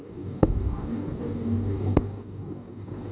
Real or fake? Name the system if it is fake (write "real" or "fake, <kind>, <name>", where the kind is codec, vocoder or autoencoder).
fake, codec, DAC